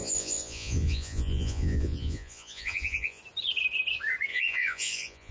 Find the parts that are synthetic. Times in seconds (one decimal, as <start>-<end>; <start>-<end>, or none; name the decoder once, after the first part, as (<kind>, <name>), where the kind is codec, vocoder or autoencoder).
0.0-3.2 (vocoder, Vocos); 4.3-5.3